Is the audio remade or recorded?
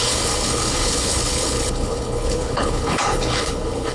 remade